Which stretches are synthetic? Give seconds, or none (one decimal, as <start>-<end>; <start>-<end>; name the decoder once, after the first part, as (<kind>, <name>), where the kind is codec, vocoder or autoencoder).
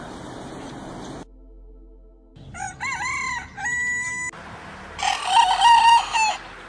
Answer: none